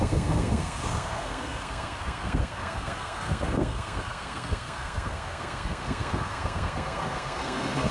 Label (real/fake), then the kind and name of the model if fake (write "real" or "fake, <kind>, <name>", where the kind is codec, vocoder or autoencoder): fake, codec, SNAC